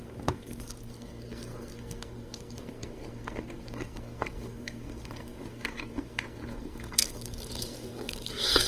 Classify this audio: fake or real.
fake